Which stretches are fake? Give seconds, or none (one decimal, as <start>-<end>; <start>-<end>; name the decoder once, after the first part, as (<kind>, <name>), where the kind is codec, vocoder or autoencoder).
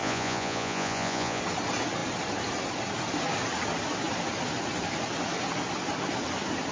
0.0-1.4 (vocoder, Vocos)